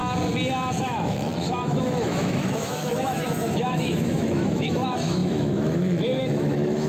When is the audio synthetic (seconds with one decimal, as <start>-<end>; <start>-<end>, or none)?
0.8-6.9